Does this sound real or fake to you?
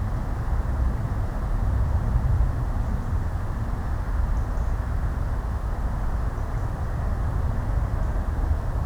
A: real